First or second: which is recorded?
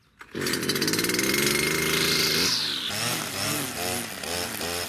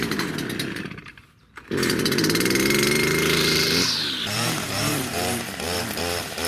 first